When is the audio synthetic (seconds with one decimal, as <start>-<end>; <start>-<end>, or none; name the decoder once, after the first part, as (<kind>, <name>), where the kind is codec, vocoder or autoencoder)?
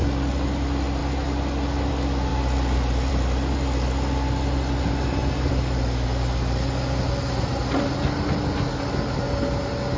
none